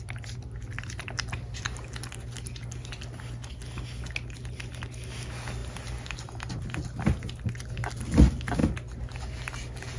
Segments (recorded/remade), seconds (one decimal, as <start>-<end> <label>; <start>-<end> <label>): 0.0-10.0 recorded